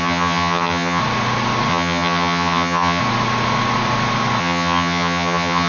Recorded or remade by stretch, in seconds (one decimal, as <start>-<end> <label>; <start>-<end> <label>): 0.0-1.0 remade; 1.0-1.7 recorded; 1.7-3.0 remade; 3.0-4.4 recorded; 4.4-5.7 remade